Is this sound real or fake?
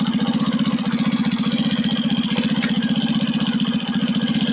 real